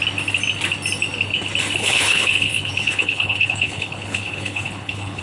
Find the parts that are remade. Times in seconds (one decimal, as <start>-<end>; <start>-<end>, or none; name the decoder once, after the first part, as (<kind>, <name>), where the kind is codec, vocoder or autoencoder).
1.8-5.2 (codec, HILCodec)